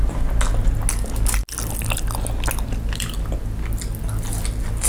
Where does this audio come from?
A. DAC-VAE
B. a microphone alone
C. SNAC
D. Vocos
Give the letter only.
B